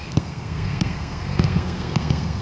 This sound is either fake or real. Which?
fake